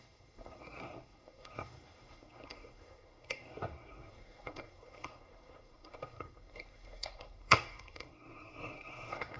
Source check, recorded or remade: remade